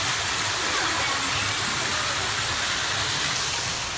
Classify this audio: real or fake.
real